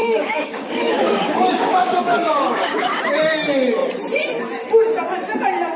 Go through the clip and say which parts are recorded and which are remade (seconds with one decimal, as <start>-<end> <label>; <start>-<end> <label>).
0.0-3.0 remade; 3.0-5.8 recorded